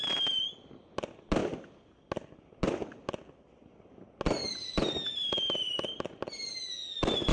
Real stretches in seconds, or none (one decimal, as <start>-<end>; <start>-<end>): 0.0-7.3